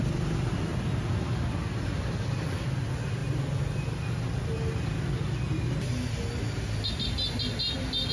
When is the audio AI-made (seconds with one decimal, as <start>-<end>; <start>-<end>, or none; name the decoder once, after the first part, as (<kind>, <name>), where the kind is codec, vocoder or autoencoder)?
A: 0.0-0.7 (vocoder, BigVGAN v2); 1.9-3.2